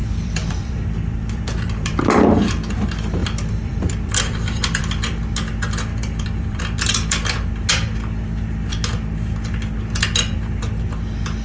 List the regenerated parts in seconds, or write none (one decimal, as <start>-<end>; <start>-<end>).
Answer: 0.0-2.0; 3.2-4.8; 5.9-7.5